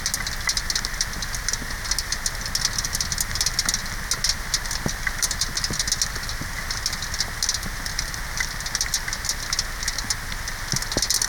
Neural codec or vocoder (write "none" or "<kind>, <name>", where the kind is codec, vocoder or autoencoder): none